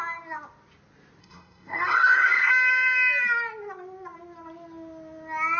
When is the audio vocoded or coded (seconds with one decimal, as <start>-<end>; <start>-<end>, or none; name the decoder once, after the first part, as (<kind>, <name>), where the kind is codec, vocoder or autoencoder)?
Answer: 1.2-2.5 (codec, SNAC)